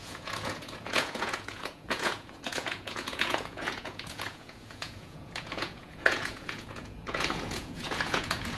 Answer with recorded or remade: remade